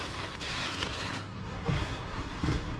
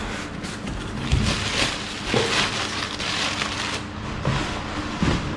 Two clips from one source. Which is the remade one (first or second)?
first